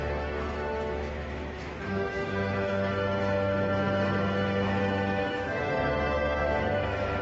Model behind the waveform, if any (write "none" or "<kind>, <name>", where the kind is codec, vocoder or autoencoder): autoencoder, DAC-VAE